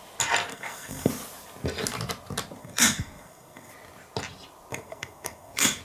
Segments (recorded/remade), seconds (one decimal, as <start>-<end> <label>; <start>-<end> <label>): 0.0-0.5 recorded; 0.5-1.1 remade; 1.1-2.6 recorded; 2.6-3.7 remade; 3.7-4.7 recorded; 4.7-5.8 remade